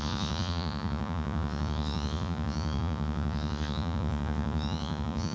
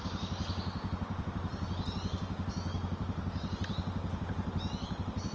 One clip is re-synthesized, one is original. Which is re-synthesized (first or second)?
first